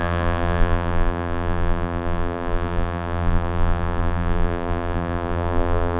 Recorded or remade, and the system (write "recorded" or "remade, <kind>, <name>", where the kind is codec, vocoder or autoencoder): remade, vocoder, BigVGAN v2